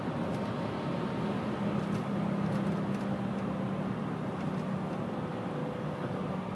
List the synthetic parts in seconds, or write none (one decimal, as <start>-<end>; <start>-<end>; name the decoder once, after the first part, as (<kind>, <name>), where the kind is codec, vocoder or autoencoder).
5.6-6.1 (codec, DAC)